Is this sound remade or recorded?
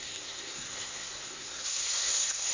remade